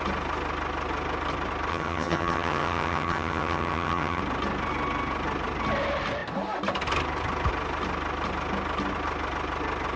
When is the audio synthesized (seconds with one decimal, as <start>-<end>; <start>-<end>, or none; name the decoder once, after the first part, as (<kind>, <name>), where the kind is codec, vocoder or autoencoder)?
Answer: 1.7-4.2 (vocoder, HiFi-GAN)